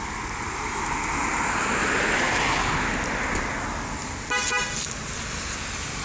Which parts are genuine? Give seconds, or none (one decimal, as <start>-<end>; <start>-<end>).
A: 0.0-6.0